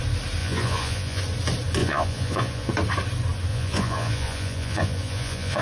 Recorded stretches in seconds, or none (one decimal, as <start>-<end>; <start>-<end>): 0.0-0.4; 1.2-1.8; 2.7-3.5